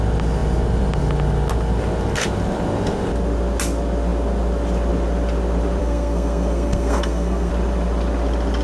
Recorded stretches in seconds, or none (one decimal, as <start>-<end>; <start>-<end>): 0.0-5.8; 7.5-8.6